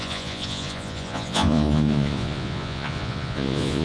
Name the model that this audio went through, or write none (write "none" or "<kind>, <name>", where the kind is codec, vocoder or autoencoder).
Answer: vocoder, Vocos